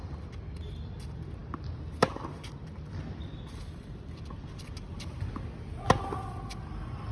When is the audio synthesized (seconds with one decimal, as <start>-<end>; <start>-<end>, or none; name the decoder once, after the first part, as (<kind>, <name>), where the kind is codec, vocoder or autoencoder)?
none